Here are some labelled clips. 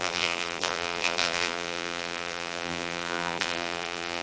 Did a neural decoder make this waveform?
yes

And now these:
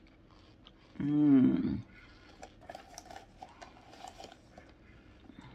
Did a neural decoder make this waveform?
no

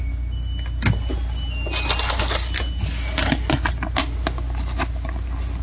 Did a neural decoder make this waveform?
no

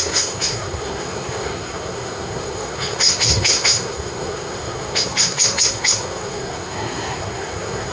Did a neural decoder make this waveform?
yes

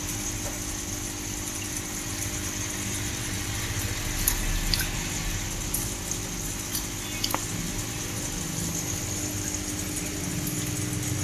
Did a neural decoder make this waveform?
no